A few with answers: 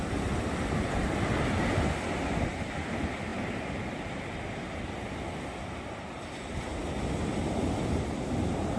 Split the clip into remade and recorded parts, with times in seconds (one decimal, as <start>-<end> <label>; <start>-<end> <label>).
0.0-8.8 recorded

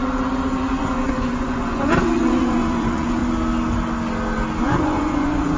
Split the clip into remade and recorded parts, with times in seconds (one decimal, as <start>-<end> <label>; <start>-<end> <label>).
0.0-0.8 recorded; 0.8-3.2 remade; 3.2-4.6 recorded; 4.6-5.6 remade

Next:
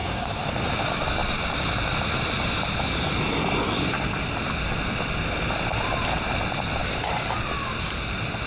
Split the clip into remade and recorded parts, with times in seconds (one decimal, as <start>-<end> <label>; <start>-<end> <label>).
0.0-0.5 remade; 0.5-8.5 recorded